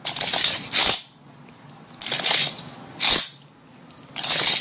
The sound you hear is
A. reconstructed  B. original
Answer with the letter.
B